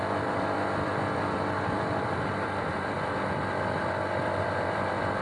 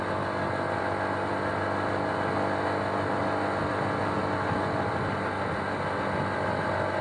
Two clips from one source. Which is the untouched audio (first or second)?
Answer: second